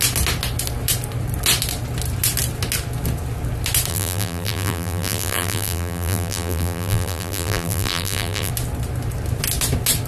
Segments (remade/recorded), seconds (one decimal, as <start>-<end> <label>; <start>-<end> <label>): 0.0-3.9 recorded; 3.9-8.5 remade; 8.5-10.1 recorded